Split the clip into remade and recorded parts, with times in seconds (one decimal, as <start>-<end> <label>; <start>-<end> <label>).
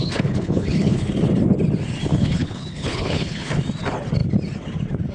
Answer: 0.0-1.1 remade; 1.1-2.1 recorded; 2.1-3.6 remade; 3.6-5.1 recorded